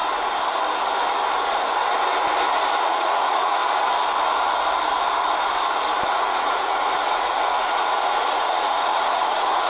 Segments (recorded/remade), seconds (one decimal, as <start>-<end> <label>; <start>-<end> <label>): 0.0-2.8 recorded; 2.8-3.6 remade; 3.6-6.1 recorded; 6.1-9.7 remade